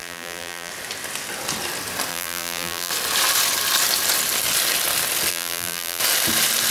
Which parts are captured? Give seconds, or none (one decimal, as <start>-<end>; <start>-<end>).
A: 0.7-2.1; 2.9-5.3; 6.0-6.7